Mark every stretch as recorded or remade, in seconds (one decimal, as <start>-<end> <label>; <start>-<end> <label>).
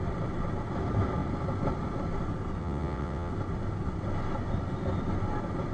0.0-2.6 recorded; 2.6-3.3 remade; 3.3-5.7 recorded